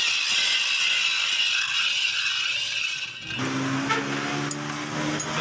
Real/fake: real